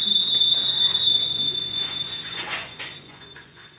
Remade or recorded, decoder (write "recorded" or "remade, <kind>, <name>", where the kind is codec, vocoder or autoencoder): remade, vocoder, Vocos